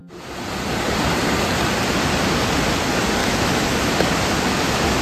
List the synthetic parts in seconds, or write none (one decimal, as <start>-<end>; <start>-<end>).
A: 3.2-4.1